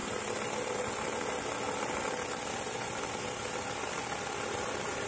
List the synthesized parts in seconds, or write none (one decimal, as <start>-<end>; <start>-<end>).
none